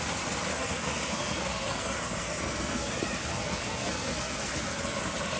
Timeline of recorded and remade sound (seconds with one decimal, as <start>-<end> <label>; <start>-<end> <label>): 0.0-0.5 recorded; 0.5-2.9 remade; 2.9-3.3 recorded; 3.3-5.0 remade; 5.0-5.4 recorded